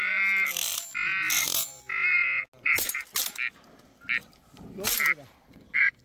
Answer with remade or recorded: recorded